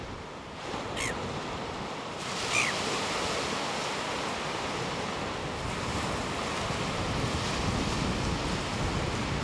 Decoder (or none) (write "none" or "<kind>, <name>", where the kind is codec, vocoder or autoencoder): none